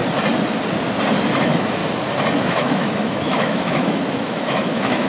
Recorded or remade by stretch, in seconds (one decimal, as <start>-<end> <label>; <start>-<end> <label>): 0.0-1.4 recorded; 1.4-1.8 remade; 1.8-2.4 recorded; 2.4-5.1 remade